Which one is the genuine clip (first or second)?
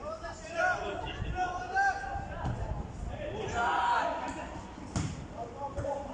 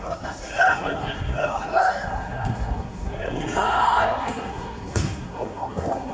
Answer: first